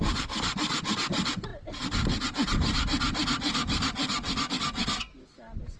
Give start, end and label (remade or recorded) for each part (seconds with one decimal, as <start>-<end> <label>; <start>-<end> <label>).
0.0-5.8 recorded